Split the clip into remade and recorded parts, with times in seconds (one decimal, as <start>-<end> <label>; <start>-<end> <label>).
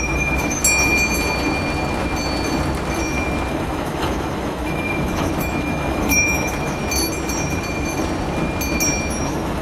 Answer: 0.0-0.6 remade; 0.6-3.5 recorded; 3.5-6.8 remade; 6.8-9.2 recorded; 9.2-9.6 remade